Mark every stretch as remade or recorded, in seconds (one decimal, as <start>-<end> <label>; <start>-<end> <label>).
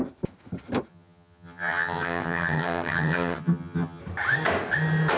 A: 0.0-0.9 recorded; 0.9-4.0 remade; 4.0-5.2 recorded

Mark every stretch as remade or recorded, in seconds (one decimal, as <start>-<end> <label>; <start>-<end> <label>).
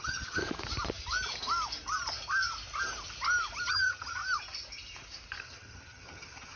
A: 0.0-0.4 remade; 0.4-3.7 recorded; 3.7-4.2 remade; 4.2-5.4 recorded; 5.4-6.6 remade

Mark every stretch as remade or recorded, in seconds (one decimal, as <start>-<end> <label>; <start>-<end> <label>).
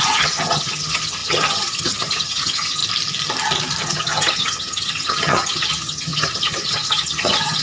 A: 0.0-2.8 remade; 2.8-3.8 recorded; 3.8-7.6 remade